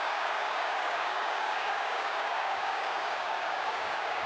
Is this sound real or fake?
fake